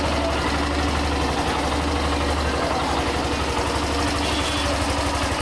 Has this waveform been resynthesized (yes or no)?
no